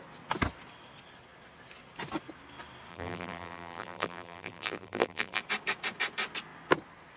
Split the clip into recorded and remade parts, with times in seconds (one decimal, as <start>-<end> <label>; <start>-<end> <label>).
0.0-2.9 recorded; 2.9-5.4 remade; 5.4-7.2 recorded